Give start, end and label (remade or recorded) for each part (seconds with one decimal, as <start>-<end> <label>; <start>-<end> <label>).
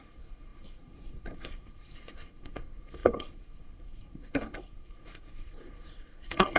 0.0-6.6 remade